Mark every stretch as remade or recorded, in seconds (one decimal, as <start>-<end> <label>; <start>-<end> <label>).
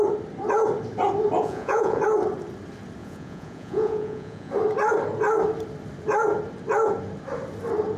0.0-1.4 recorded; 1.4-2.0 remade; 2.0-3.0 recorded; 3.0-4.5 remade; 4.5-8.0 recorded